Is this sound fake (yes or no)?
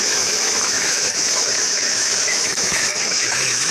yes